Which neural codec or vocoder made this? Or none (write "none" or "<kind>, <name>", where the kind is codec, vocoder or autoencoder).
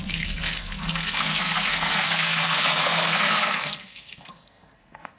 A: codec, SNAC